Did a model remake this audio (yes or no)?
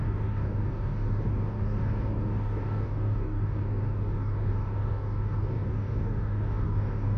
yes